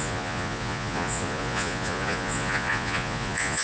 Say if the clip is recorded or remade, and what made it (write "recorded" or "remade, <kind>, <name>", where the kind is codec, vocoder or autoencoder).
remade, vocoder, Vocos